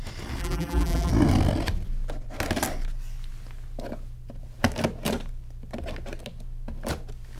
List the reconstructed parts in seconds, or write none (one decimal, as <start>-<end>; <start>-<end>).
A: 0.4-1.1